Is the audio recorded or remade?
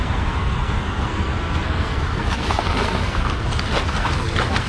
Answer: remade